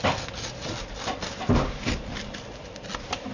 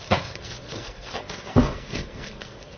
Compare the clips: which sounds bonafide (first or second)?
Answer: first